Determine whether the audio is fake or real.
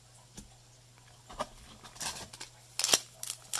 real